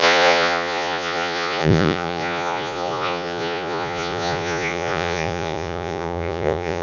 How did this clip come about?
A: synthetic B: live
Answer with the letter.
A